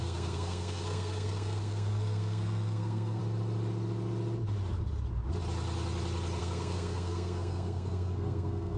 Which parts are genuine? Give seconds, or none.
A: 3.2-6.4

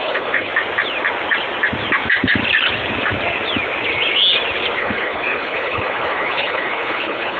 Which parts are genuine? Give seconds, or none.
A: 0.5-4.8

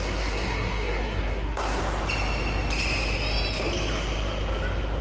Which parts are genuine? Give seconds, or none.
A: 1.8-5.0